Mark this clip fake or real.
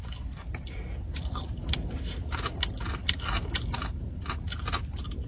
real